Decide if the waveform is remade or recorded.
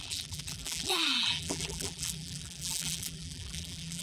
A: remade